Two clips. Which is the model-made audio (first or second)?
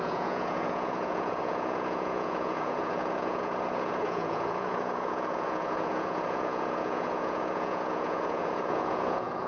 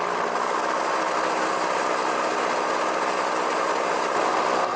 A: first